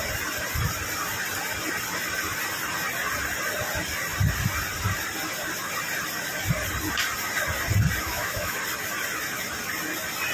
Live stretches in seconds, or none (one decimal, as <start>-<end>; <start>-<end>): 0.0-8.0; 8.6-10.3